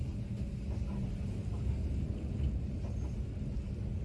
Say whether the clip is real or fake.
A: real